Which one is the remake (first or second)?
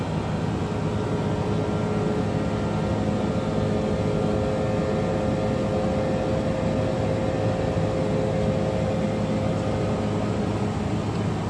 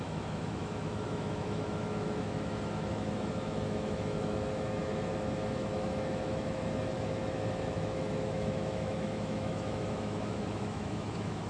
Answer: second